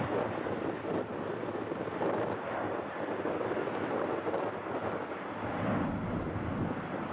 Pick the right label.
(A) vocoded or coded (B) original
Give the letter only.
B